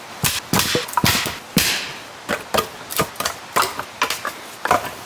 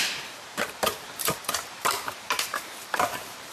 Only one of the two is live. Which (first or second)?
first